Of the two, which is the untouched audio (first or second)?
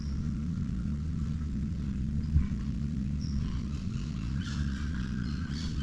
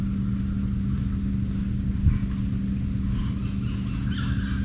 second